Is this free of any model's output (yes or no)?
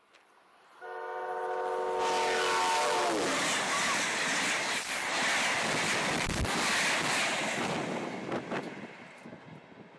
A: yes